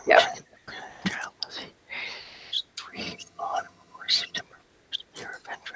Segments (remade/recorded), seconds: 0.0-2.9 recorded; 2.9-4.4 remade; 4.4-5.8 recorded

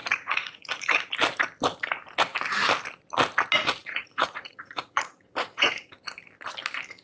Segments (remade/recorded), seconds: 0.0-1.1 remade; 1.1-3.8 recorded; 3.8-5.9 remade; 5.9-7.0 recorded

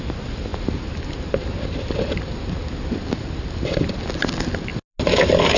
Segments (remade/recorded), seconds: 0.0-5.6 recorded

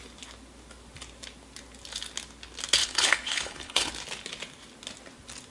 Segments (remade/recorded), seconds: 0.0-2.8 recorded; 2.8-3.9 remade; 3.9-5.5 recorded

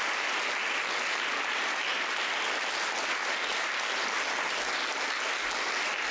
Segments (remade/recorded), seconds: 0.0-6.1 recorded